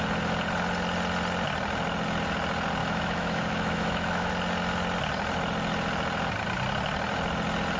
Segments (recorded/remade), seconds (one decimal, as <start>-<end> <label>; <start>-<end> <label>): 0.0-2.8 recorded; 2.8-4.3 remade; 4.3-7.8 recorded

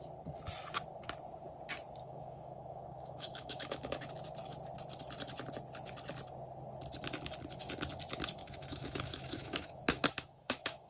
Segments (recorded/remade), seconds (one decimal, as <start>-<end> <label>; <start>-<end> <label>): 0.0-2.0 recorded; 2.0-4.1 remade; 4.1-8.4 recorded; 8.4-10.9 remade

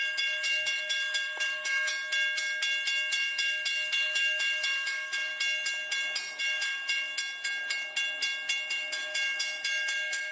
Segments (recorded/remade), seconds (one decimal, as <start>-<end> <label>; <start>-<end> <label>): 0.0-1.9 remade; 1.9-3.1 recorded; 3.1-5.3 remade; 5.3-6.4 recorded; 6.4-7.1 remade; 7.1-8.7 recorded; 8.7-10.3 remade

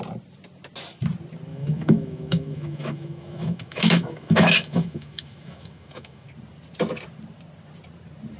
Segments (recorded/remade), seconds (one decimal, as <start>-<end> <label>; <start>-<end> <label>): 0.0-1.5 recorded; 1.5-6.3 remade; 6.3-8.4 recorded

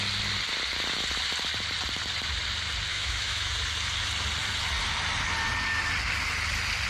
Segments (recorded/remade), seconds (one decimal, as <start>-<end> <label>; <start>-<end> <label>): 0.0-2.9 recorded; 2.9-3.5 remade; 3.5-6.9 recorded

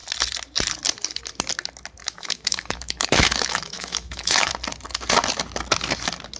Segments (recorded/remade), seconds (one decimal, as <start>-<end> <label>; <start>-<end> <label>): 0.0-2.0 recorded; 2.0-4.5 remade; 4.5-6.4 recorded

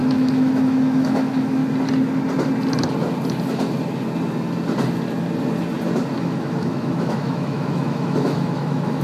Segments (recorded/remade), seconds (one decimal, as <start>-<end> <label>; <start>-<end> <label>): 0.0-1.6 remade; 1.6-6.2 recorded; 6.2-9.0 remade